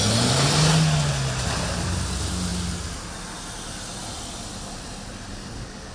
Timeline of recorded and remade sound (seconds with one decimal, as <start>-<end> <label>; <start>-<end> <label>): 0.0-5.9 recorded